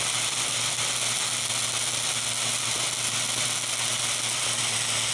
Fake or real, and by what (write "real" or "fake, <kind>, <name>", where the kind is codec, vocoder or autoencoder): real